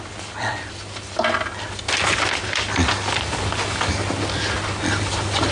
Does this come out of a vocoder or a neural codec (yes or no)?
no